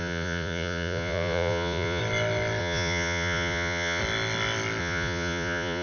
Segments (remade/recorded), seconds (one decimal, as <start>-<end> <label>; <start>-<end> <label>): 0.0-2.0 remade; 2.0-2.6 recorded; 2.6-4.0 remade; 4.0-4.8 recorded; 4.8-5.8 remade